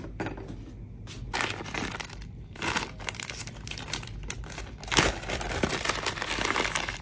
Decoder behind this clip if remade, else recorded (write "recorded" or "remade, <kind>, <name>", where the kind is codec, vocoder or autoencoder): recorded